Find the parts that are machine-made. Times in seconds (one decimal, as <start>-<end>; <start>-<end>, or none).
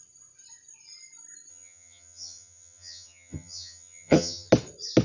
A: 1.5-4.5